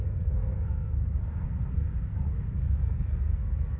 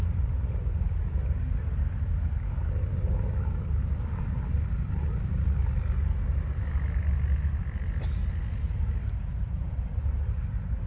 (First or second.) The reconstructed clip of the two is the first